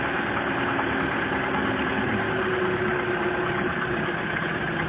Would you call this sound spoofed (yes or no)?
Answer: no